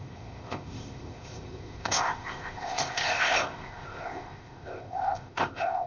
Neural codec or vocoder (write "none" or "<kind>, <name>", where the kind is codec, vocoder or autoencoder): codec, ZipCodec